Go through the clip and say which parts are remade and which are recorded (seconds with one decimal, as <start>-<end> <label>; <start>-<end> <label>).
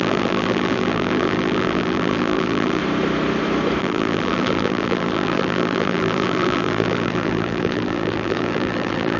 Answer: 0.0-2.8 remade; 2.8-3.8 recorded; 3.8-9.2 remade